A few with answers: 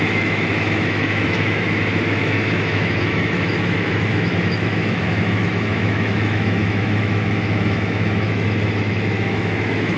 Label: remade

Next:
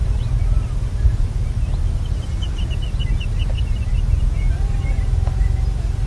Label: recorded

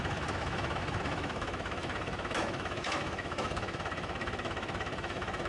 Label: remade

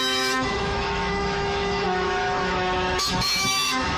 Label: remade